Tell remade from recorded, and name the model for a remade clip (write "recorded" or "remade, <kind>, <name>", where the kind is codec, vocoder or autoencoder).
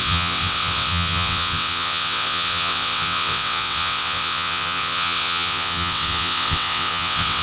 remade, vocoder, WaveNeXt